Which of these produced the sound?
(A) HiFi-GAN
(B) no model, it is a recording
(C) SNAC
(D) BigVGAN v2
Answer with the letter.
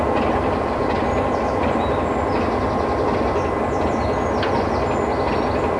B